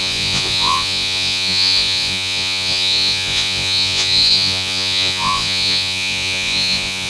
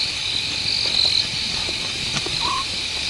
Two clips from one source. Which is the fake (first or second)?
first